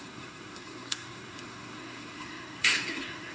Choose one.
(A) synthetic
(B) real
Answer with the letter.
A